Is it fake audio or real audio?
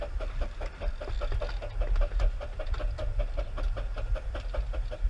real